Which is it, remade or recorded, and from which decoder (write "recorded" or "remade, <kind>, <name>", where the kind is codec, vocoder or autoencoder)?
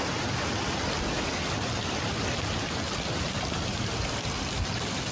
recorded